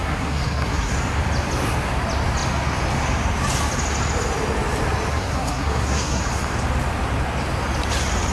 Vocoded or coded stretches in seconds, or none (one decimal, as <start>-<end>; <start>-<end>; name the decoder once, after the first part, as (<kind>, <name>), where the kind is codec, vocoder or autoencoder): 0.0-0.9 (codec, SNAC); 5.1-6.2